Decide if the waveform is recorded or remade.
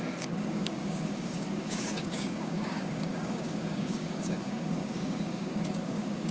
remade